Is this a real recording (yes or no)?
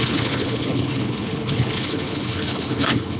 no